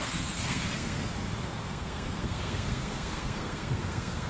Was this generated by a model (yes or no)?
yes